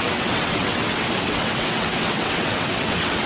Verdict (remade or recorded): remade